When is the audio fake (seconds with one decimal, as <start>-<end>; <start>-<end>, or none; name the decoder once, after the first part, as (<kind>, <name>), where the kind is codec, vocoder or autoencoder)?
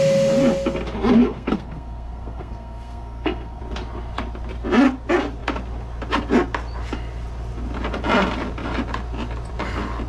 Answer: 1.2-3.6 (codec, SNAC)